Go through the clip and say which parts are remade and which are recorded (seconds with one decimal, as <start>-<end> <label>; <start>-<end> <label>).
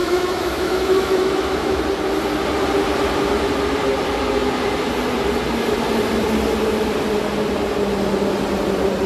0.0-1.8 remade; 1.8-9.1 recorded